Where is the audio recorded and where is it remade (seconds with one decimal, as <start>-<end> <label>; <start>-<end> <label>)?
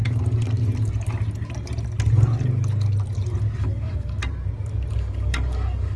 0.0-3.6 recorded; 3.6-4.2 remade; 4.2-4.9 recorded; 4.9-6.0 remade